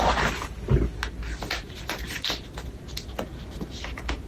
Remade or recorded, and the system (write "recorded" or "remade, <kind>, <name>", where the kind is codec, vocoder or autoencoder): recorded